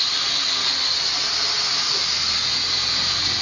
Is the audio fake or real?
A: real